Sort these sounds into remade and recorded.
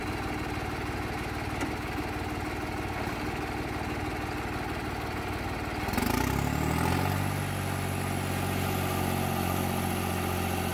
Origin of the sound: recorded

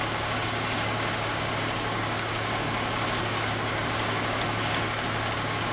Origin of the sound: remade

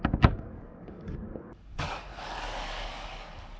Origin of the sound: remade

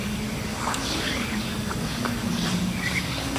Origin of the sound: remade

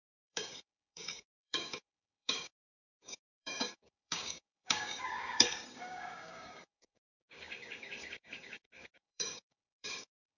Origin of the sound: remade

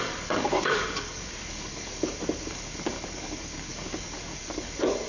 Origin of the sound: remade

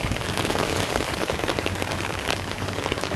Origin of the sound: remade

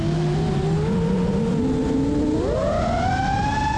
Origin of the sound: recorded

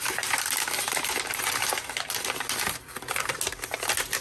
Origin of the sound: recorded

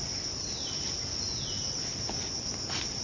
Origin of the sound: recorded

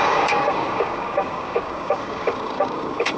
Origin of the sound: remade